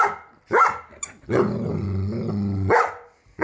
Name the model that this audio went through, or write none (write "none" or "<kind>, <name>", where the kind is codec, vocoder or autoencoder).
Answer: none